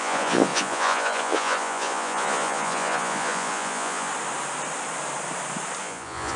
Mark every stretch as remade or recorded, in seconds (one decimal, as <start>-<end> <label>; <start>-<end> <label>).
0.0-4.1 remade; 4.1-5.8 recorded; 5.8-6.4 remade